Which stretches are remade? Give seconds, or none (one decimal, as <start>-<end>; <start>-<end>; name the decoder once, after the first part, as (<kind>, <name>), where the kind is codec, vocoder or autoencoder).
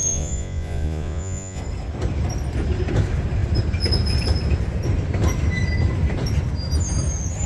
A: 0.0-1.6 (vocoder, Vocos)